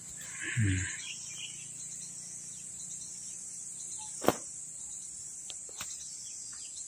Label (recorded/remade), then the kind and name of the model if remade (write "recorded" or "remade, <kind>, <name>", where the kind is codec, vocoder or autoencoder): recorded